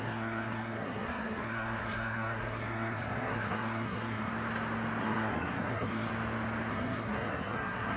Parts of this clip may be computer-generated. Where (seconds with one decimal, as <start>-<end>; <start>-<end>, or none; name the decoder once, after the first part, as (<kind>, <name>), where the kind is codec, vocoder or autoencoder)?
0.0-4.3 (codec, SNAC); 5.0-6.1; 6.7-8.0